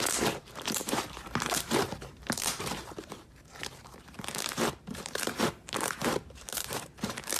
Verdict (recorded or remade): remade